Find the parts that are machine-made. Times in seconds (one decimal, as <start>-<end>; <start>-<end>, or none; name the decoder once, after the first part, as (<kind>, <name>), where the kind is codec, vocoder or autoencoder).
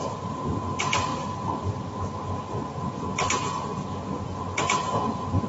none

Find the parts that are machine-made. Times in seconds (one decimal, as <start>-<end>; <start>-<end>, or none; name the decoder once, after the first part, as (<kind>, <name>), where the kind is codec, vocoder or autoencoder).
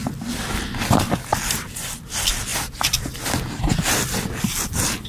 none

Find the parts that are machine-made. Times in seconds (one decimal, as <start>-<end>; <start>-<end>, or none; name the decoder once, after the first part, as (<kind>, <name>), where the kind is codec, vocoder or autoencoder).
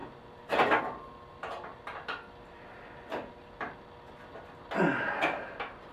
none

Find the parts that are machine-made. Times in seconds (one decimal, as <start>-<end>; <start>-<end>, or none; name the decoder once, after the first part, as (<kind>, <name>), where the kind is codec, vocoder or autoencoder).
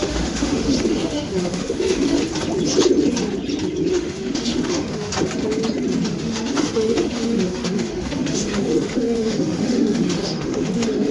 0.0-2.2 (autoencoder, DAC-VAE); 3.9-5.1; 6.1-11.1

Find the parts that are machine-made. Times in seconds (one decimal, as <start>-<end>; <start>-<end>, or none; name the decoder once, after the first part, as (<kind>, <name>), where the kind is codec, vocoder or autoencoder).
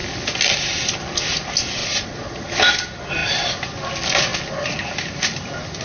1.8-2.4 (vocoder, Vocos)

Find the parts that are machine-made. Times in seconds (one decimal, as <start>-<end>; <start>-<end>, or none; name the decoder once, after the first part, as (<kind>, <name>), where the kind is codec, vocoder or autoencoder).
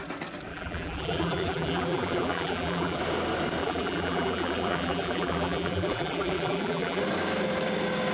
0.5-3.0 (vocoder, BigVGAN v2); 3.6-7.0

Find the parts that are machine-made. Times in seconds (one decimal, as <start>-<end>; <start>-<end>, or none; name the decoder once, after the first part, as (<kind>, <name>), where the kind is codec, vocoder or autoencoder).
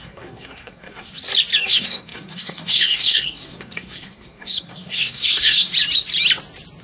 0.0-1.1 (codec, SNAC); 1.7-5.7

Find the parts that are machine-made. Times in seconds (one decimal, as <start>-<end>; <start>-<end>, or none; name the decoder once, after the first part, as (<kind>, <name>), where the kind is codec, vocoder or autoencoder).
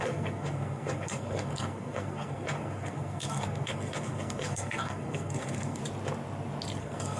0.0-5.8 (codec, SNAC); 6.8-7.2